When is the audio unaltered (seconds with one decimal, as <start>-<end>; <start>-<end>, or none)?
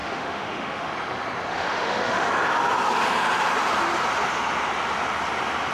0.9-1.5; 2.3-5.7